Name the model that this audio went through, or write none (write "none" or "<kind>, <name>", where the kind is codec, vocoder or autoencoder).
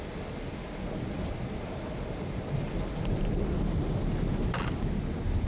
none